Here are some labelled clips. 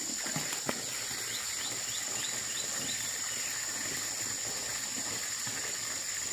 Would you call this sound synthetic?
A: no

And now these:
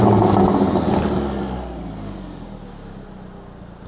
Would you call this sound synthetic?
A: no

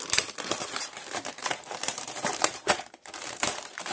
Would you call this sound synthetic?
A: yes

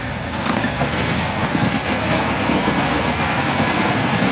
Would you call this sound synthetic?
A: yes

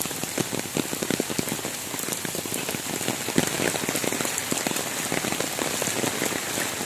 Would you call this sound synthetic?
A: no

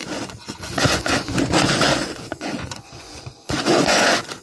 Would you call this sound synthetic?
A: yes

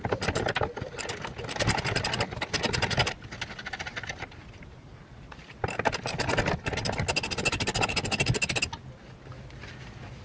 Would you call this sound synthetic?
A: no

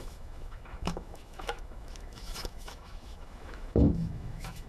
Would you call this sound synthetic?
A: yes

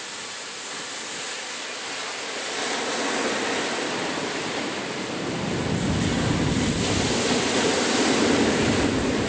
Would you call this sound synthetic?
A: no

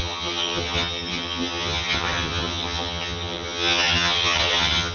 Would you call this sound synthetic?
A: yes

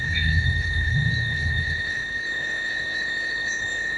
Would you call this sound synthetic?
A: yes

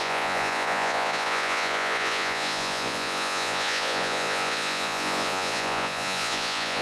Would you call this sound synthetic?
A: yes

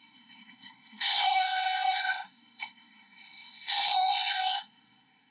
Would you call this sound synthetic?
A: yes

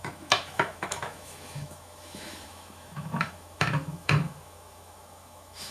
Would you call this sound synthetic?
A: yes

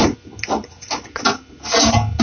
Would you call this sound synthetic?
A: no